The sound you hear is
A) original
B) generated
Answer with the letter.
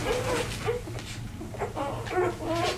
A